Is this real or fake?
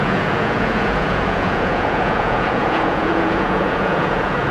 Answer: fake